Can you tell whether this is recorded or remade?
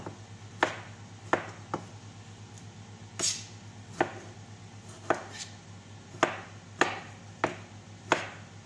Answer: recorded